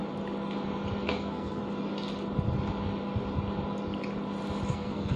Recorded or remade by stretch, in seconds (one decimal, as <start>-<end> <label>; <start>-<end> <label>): 0.0-1.0 recorded; 1.0-1.6 remade; 1.6-4.7 recorded; 4.7-5.2 remade